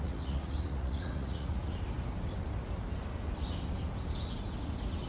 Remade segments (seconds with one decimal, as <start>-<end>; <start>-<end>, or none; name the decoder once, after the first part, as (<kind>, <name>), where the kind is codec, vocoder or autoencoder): 0.0-1.7 (vocoder, Vocos)